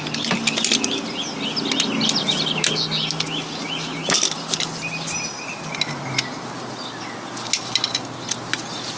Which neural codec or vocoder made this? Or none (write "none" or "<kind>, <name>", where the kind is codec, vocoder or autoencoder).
none